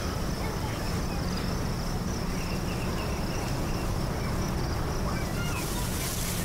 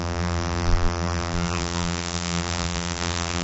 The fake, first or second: second